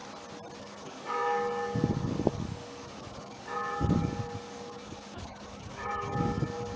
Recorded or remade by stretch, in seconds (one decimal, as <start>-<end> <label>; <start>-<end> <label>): 0.0-0.6 recorded; 0.6-6.8 remade